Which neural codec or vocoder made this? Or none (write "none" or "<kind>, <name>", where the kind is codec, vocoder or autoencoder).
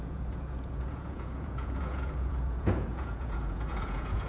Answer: vocoder, Vocos